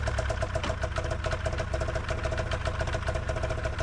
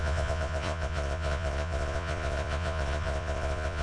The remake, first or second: second